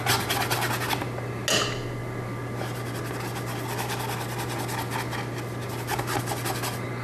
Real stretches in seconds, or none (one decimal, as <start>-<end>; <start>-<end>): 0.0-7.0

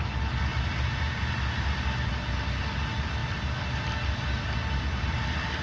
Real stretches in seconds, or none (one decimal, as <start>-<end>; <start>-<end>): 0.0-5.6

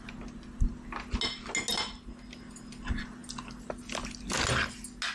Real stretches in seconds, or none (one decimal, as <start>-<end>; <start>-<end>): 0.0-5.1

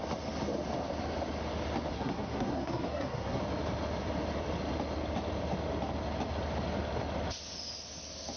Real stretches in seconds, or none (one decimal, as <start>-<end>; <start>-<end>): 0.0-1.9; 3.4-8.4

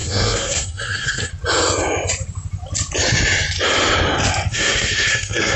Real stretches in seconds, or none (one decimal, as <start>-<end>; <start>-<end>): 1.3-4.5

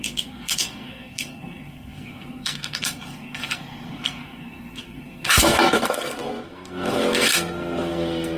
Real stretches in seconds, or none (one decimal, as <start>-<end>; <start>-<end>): none

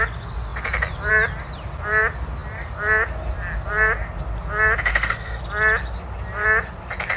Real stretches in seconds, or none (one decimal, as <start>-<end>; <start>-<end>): 0.0-4.9; 5.4-7.2